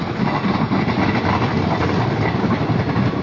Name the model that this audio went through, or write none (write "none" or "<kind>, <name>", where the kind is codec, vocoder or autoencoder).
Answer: none